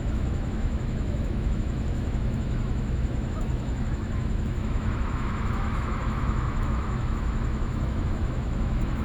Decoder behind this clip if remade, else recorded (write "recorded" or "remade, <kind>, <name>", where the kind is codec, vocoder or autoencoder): remade, autoencoder, DAC-VAE